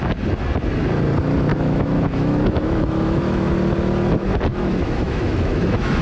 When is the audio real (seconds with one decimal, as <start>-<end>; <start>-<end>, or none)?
0.0-1.5; 3.5-4.5